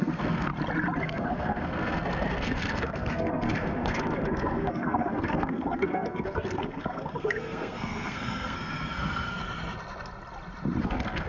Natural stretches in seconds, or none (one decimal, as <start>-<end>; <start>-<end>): 0.5-1.0; 9.4-10.8